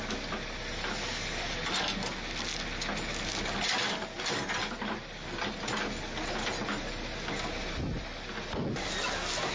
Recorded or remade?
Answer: recorded